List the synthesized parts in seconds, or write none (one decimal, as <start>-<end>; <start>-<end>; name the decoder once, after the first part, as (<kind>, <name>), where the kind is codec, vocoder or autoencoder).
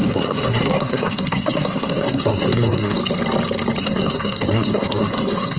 0.0-3.0 (codec, SNAC); 3.8-5.6